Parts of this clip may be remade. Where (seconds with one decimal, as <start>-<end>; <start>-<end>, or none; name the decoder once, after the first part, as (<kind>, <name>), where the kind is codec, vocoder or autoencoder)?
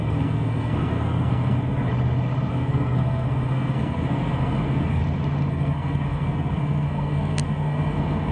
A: 0.0-1.9 (codec, SNAC); 2.5-5.0; 5.5-8.3